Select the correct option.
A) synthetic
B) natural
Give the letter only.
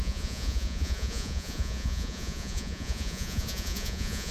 A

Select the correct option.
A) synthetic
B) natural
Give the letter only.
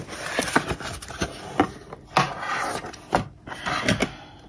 B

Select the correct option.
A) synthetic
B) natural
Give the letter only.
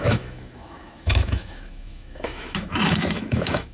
A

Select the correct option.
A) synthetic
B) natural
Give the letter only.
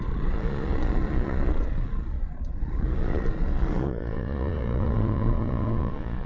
A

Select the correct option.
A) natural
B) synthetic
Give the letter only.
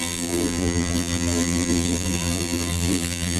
B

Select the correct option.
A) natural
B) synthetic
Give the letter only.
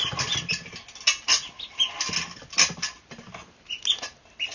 A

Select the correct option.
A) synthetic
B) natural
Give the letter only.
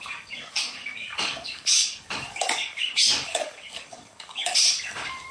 A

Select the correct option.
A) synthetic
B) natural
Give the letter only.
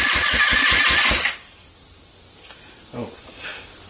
B